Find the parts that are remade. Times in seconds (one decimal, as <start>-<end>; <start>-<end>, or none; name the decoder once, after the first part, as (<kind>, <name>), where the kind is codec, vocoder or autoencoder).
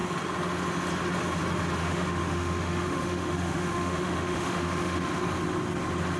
1.8-5.1 (autoencoder, DAC-VAE)